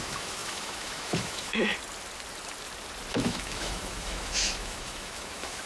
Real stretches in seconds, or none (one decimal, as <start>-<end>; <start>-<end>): 1.7-3.1